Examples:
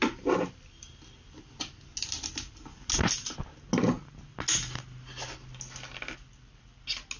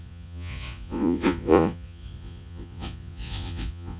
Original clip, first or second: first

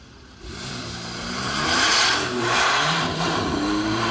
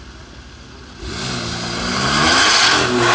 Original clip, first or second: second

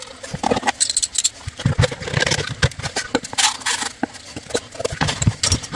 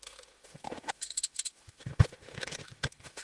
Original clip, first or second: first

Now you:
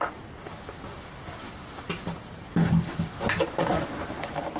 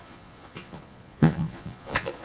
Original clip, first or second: first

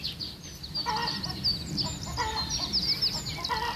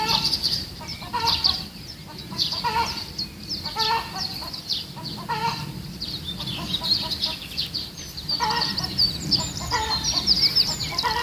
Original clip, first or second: first